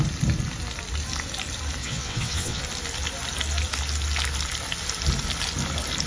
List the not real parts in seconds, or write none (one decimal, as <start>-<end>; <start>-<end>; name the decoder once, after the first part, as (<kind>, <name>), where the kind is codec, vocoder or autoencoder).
1.8-2.6 (vocoder, WaveNeXt)